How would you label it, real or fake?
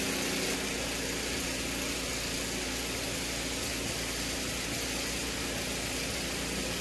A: real